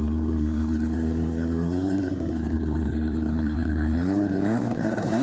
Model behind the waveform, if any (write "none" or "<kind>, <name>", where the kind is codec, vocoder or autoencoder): codec, SNAC